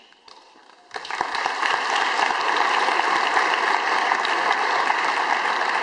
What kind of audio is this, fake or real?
fake